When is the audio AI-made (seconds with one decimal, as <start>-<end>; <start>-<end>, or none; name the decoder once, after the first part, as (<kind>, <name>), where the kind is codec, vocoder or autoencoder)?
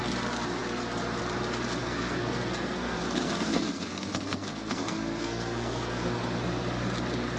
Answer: 1.8-6.2 (codec, SNAC)